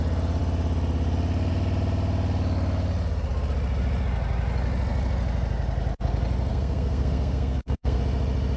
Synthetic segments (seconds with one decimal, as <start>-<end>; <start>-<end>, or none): 6.5-8.0